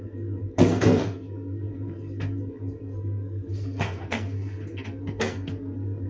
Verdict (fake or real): fake